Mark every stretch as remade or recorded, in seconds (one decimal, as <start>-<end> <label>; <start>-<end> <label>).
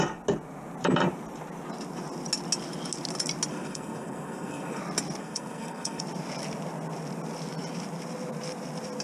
0.0-3.5 recorded; 3.5-4.8 remade; 4.8-5.2 recorded; 5.2-6.0 remade; 6.0-9.0 recorded